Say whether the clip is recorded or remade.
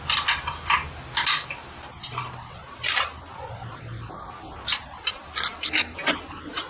recorded